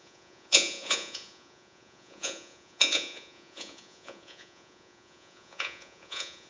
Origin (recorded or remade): remade